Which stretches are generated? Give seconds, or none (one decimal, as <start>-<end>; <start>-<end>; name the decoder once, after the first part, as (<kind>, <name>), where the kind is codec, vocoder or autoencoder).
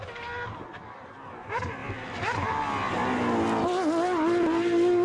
none